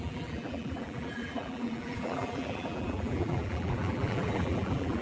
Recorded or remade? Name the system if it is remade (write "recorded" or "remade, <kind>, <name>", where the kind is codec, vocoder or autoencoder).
remade, vocoder, BigVGAN v2